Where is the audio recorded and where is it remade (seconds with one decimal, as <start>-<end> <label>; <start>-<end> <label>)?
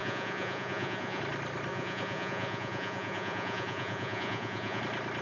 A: 0.0-1.2 remade; 1.2-1.7 recorded; 1.7-4.8 remade; 4.8-5.2 recorded